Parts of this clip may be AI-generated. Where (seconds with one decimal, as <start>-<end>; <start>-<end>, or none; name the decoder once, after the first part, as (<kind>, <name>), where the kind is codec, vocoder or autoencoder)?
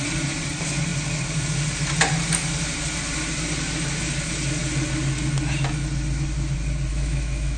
6.9-7.6 (autoencoder, DAC-VAE)